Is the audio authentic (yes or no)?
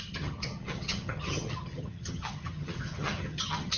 no